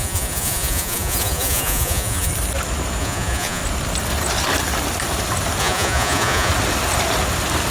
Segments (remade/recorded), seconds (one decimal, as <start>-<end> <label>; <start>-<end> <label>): 0.0-2.3 remade; 2.3-3.0 recorded; 3.0-3.6 remade; 3.6-5.6 recorded; 5.6-6.5 remade; 6.5-7.7 recorded